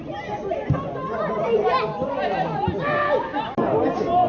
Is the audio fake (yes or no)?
no